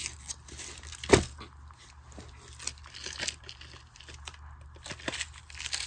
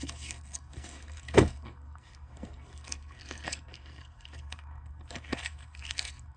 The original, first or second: first